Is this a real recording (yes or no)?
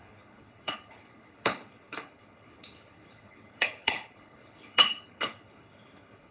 no